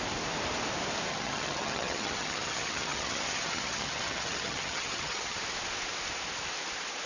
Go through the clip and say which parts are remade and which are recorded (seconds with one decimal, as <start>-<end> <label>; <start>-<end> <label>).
0.0-1.1 recorded; 1.1-5.4 remade; 5.4-7.1 recorded